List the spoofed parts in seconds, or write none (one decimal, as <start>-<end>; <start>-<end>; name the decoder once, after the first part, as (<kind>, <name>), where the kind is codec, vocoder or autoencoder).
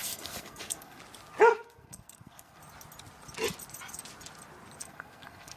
0.0-1.0 (codec, SNAC); 1.5-2.6; 4.8-5.6